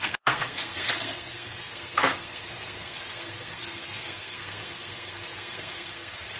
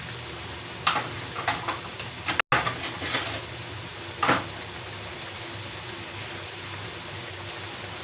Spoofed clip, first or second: first